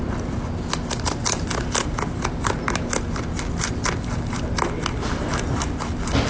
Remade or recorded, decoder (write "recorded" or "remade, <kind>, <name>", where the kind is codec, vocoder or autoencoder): recorded